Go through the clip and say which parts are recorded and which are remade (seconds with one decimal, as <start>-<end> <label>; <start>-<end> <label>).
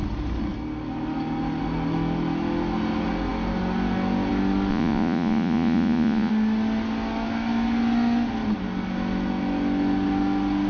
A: 0.0-4.7 recorded; 4.7-6.3 remade; 6.3-10.7 recorded